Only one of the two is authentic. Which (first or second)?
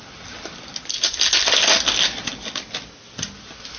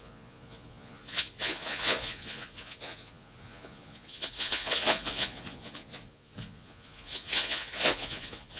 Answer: first